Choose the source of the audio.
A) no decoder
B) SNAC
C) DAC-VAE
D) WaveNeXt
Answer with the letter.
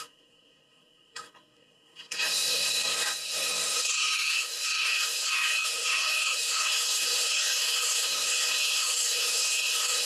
B